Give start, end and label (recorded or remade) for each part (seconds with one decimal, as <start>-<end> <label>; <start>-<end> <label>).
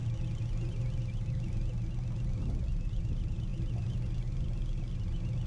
0.0-5.5 recorded